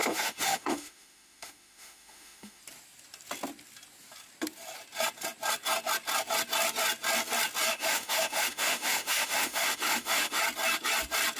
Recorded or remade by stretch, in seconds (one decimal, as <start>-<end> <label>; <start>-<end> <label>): 0.0-2.6 remade; 2.6-7.7 recorded; 7.7-10.4 remade; 10.4-11.4 recorded

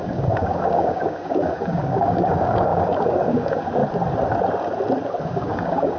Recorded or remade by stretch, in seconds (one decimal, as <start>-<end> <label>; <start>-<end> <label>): 0.0-3.8 remade; 3.8-5.2 recorded; 5.2-6.0 remade

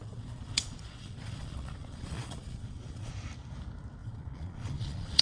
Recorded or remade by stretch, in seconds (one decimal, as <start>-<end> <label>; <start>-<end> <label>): 0.0-3.1 remade; 3.1-4.0 recorded; 4.0-5.2 remade